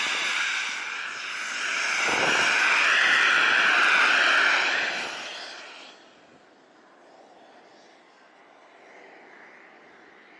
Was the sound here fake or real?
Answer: real